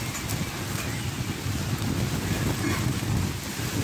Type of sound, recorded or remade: recorded